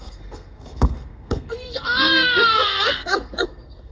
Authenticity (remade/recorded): remade